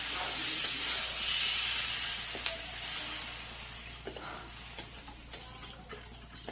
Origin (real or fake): real